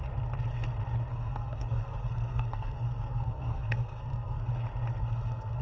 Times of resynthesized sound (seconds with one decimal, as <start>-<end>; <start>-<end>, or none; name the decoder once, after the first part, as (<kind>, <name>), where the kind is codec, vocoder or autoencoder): 1.1-4.5 (codec, SNAC); 5.0-5.6